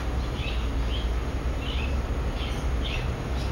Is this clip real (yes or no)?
yes